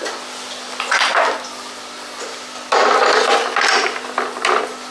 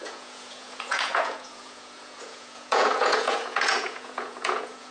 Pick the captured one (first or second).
first